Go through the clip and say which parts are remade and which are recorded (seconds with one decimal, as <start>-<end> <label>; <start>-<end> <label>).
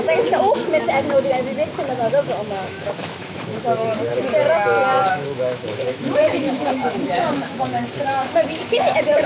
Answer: 0.0-1.4 remade; 1.4-2.1 recorded; 2.1-4.1 remade; 4.1-5.1 recorded; 5.1-9.3 remade